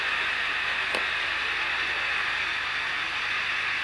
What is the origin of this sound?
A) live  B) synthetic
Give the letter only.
A